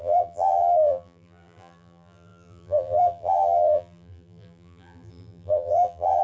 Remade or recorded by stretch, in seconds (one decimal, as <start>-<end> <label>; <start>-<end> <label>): 0.0-6.2 remade